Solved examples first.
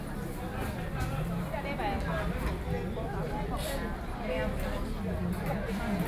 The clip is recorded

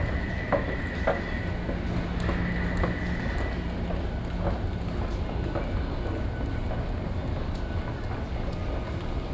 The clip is recorded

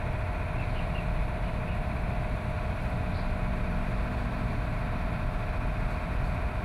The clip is recorded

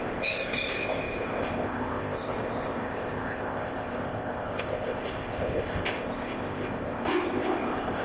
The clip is remade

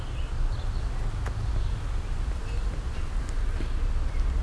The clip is recorded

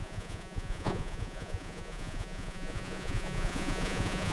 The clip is remade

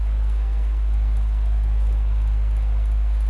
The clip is remade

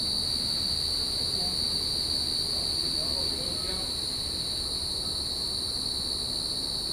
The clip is recorded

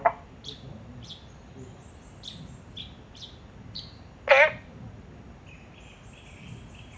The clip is recorded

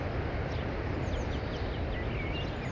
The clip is recorded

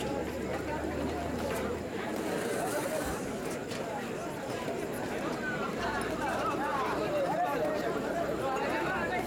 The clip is remade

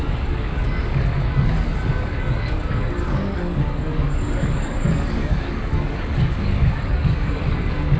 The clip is remade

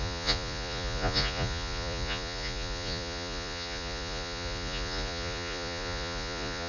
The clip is remade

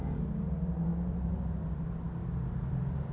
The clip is recorded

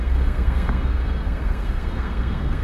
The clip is remade